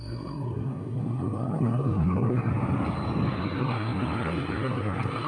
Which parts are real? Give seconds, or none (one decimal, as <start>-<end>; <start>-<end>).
2.5-3.4